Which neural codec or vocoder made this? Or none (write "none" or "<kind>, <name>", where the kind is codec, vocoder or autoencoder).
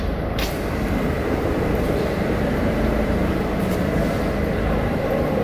vocoder, BigVGAN v2